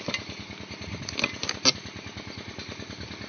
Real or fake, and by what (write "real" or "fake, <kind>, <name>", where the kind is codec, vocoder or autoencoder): real